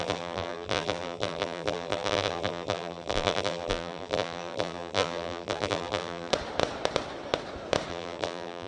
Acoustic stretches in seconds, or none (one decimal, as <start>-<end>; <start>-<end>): 6.3-7.9